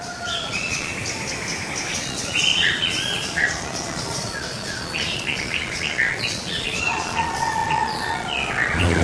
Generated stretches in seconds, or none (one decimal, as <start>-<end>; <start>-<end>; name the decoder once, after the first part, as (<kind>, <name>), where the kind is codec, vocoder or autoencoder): 0.0-0.9 (vocoder, Vocos); 1.9-9.0